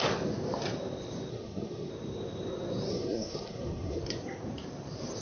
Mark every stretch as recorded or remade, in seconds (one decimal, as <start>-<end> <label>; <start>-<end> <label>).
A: 0.0-1.3 recorded; 1.3-1.9 remade; 1.9-2.9 recorded; 2.9-4.0 remade; 4.0-5.2 recorded